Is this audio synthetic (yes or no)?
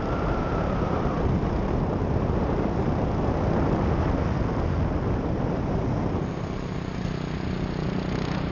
no